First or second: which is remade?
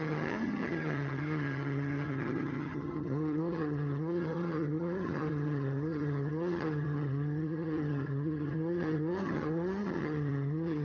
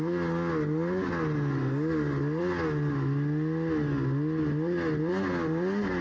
first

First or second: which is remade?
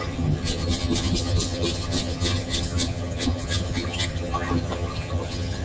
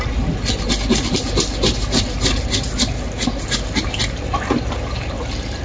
first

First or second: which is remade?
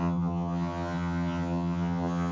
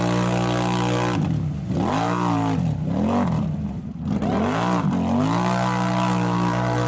first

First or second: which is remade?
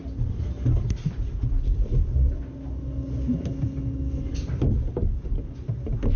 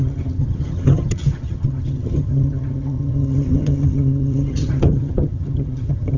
second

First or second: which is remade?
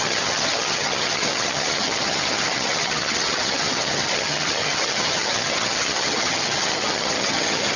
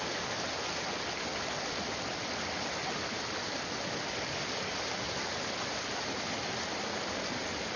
first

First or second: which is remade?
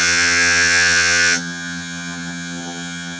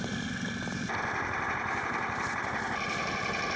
first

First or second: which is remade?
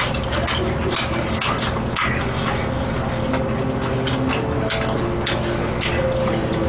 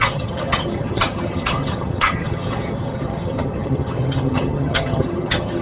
second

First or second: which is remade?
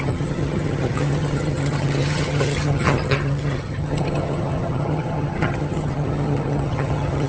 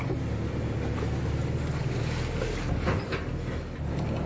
first